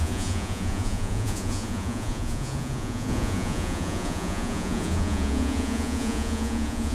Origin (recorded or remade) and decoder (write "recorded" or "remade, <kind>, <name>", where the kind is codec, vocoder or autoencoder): remade, vocoder, Vocos